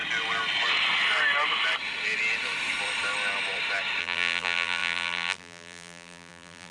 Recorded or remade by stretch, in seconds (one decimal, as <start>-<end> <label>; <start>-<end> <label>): 0.0-4.0 recorded; 4.0-6.7 remade